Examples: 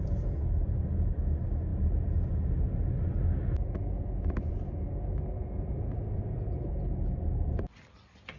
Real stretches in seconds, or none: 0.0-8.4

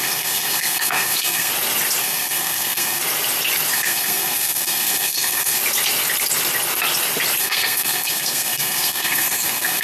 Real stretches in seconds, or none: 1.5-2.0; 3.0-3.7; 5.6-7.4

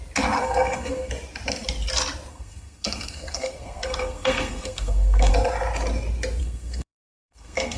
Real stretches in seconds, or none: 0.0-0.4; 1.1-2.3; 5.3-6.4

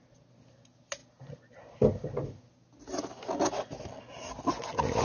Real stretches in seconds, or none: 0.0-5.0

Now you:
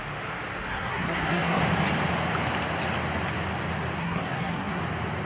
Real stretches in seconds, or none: 0.0-0.7; 1.6-4.0; 4.8-5.3

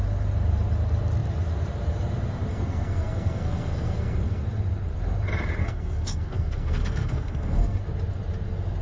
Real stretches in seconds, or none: 0.0-2.5; 4.4-5.6; 7.8-8.8